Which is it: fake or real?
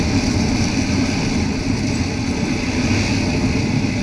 real